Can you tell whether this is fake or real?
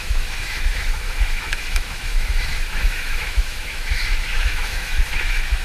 fake